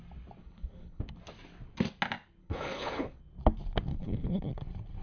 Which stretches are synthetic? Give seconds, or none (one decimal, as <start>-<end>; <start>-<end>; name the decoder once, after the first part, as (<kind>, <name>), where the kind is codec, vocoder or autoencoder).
0.4-1.0 (codec, HILCodec); 2.4-3.2; 3.9-4.5